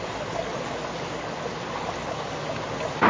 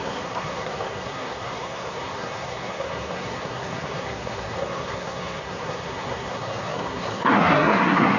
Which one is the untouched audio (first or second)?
first